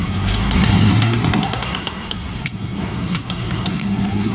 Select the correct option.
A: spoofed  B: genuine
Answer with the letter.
A